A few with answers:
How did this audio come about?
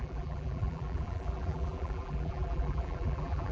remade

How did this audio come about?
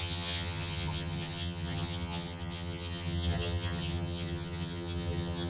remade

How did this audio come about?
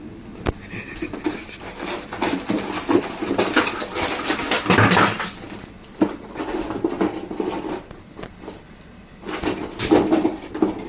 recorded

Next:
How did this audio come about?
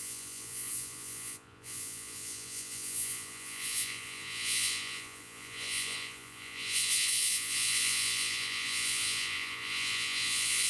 remade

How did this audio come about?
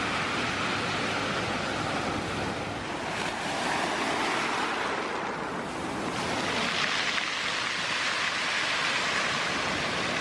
recorded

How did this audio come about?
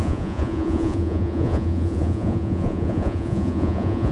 remade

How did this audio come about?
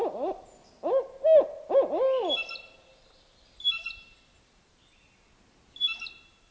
recorded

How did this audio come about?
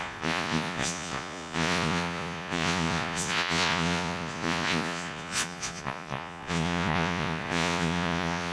remade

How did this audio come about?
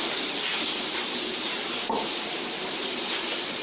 remade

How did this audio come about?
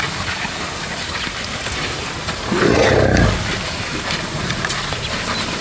recorded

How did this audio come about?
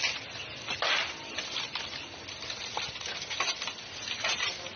recorded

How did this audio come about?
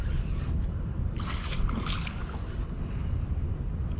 recorded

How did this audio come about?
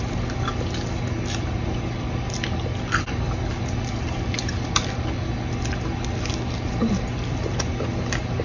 recorded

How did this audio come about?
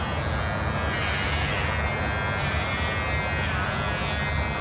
recorded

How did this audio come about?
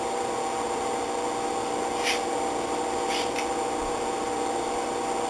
recorded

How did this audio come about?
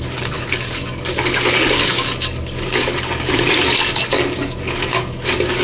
remade